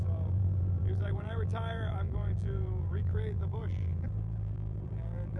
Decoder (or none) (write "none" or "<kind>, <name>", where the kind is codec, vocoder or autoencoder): vocoder, BigVGAN v2